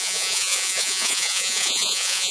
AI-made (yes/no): yes